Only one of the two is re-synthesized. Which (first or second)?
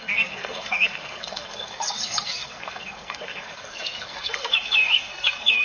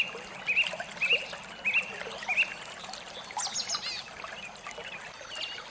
first